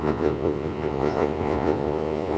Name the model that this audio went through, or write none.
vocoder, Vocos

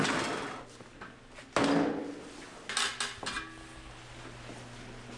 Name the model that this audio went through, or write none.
none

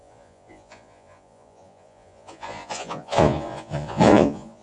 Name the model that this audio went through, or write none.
vocoder, Vocos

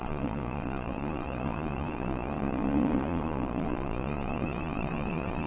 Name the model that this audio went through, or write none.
vocoder, Vocos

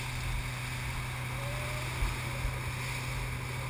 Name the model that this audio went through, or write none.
none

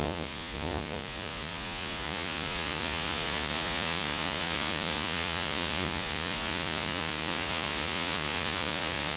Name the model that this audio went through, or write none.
vocoder, Vocos